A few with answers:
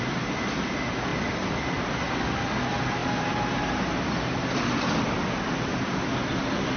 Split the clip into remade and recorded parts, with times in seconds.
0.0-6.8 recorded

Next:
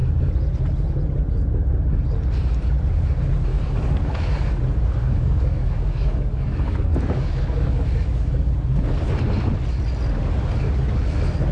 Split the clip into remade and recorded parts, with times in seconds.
0.0-3.5 recorded; 3.5-4.6 remade; 4.6-5.0 recorded; 5.0-8.5 remade; 8.5-11.5 recorded

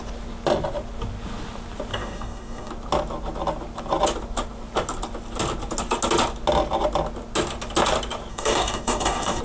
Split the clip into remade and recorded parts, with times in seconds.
0.0-1.9 recorded; 1.9-2.7 remade; 2.7-8.3 recorded; 8.3-9.4 remade

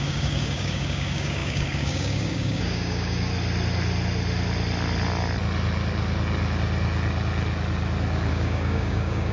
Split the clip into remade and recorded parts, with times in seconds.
0.0-3.3 remade; 3.3-8.3 recorded; 8.3-9.3 remade